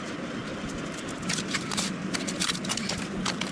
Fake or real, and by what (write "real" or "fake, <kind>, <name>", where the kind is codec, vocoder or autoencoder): real